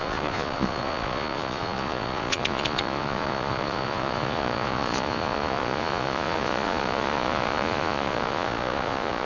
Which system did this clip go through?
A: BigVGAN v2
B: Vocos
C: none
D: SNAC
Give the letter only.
B